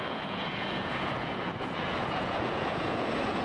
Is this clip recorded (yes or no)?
no